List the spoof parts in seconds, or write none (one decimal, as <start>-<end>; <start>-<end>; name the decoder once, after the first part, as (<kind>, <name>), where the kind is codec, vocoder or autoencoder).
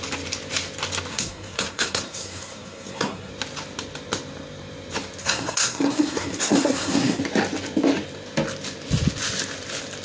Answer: 1.1-3.3 (codec, SNAC); 5.2-7.2